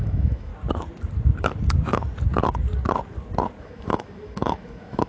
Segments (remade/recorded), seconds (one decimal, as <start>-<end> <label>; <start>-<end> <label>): 0.0-0.5 remade; 0.5-3.6 recorded; 3.6-5.1 remade